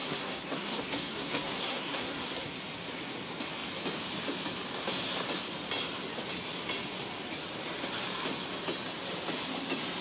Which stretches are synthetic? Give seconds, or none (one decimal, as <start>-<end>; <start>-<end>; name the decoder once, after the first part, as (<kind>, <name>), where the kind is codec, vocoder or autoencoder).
0.0-2.6 (codec, SNAC)

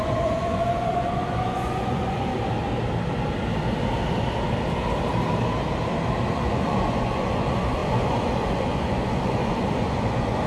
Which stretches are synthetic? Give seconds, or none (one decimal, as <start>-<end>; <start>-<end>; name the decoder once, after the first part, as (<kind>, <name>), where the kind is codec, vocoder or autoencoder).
0.0-2.3 (vocoder, Vocos); 6.3-10.5

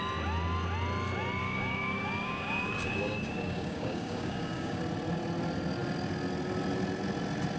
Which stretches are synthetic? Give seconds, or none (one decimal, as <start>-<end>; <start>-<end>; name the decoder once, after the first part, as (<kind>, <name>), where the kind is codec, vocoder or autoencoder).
1.4-4.8 (codec, DAC)

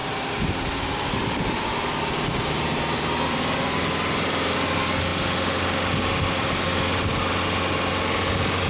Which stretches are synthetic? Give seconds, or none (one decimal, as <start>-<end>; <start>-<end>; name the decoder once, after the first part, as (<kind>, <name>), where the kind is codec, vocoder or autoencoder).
0.0-2.0 (vocoder, BigVGAN v2)

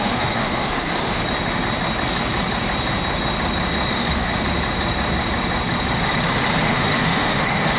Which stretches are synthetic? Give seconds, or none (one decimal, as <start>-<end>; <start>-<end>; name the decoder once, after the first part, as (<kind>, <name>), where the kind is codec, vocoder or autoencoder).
0.0-1.2 (autoencoder, DAC-VAE); 3.9-4.3; 6.6-7.8

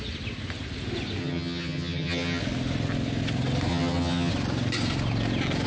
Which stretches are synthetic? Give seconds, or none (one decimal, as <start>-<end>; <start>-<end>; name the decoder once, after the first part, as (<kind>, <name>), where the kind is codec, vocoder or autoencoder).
1.2-2.4 (vocoder, HiFi-GAN); 3.7-4.3

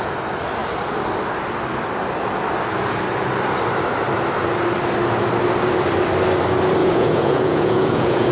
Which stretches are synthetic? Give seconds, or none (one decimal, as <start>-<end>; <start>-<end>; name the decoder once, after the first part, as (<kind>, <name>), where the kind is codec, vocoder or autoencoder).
6.8-8.3 (vocoder, Vocos)